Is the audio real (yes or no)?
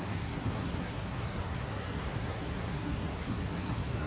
no